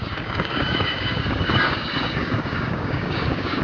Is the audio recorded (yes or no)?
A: no